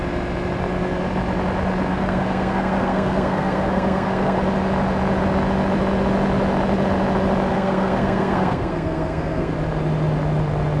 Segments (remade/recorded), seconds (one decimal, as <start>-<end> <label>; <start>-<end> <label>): 0.0-1.9 recorded; 1.9-4.4 remade; 4.4-7.5 recorded; 7.5-9.5 remade; 9.5-10.8 recorded

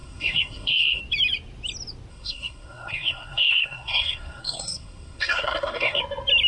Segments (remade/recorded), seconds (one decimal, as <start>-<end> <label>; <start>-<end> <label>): 0.0-1.0 remade; 1.0-2.1 recorded; 2.1-6.0 remade; 6.0-6.5 recorded

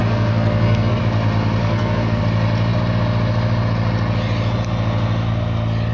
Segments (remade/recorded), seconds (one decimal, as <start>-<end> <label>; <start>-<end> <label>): 0.0-1.0 remade; 1.0-1.6 recorded; 1.6-2.2 remade; 2.2-5.9 recorded

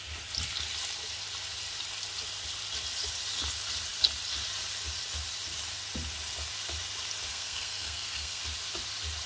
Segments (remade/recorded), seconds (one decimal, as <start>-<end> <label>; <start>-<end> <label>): 0.0-7.3 recorded; 7.3-8.4 remade; 8.4-9.3 recorded

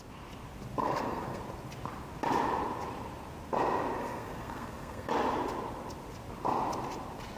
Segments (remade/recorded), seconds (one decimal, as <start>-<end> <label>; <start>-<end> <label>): 0.0-0.8 recorded; 0.8-1.4 remade; 1.4-4.0 recorded; 4.0-5.1 remade; 5.1-7.4 recorded

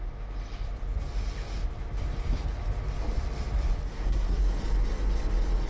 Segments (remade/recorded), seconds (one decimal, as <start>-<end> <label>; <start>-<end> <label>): 0.0-3.9 recorded; 3.9-4.4 remade; 4.4-5.7 recorded

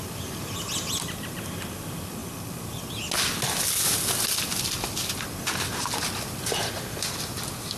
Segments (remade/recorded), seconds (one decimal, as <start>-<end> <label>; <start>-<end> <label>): 0.0-7.8 recorded

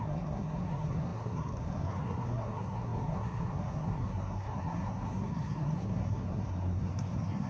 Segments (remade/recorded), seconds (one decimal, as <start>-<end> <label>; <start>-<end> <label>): 0.0-7.5 remade